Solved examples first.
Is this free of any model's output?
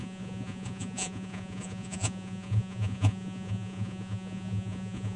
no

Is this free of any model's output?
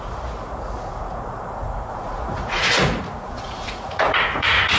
no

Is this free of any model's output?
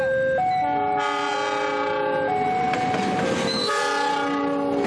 yes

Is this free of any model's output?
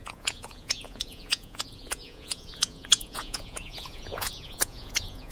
no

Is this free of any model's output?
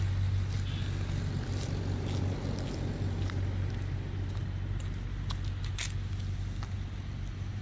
yes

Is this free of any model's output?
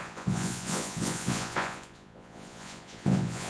no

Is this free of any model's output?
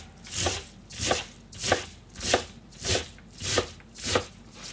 yes